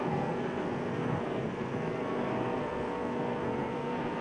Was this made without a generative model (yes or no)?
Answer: no